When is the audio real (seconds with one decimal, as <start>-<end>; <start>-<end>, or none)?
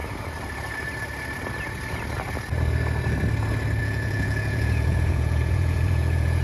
0.0-3.8